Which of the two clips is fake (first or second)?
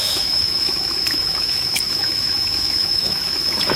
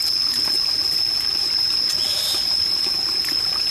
first